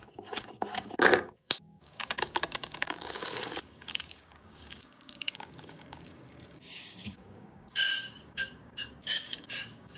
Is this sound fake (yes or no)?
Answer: yes